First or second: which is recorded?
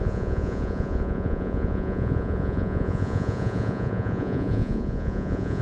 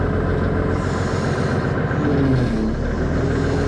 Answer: second